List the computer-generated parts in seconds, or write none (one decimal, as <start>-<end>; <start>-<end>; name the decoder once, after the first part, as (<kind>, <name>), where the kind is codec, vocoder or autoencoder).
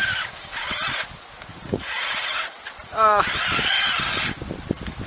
1.5-3.2 (vocoder, Vocos)